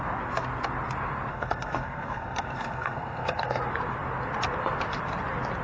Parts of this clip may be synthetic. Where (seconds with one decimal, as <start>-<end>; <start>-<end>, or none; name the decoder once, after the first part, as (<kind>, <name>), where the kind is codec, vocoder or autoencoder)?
1.3-3.6 (codec, SNAC)